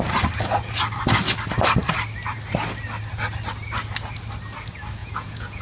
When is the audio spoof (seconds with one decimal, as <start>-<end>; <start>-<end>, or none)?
5.0-5.6